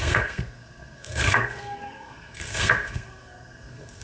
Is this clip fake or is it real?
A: fake